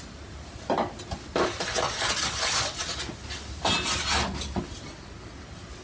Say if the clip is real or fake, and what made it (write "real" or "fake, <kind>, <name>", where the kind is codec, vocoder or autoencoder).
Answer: real